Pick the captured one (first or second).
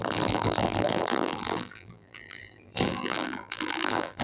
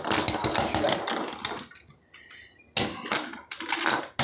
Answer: second